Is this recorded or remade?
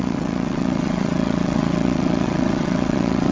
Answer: remade